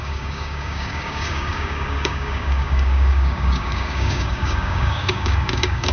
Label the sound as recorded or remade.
remade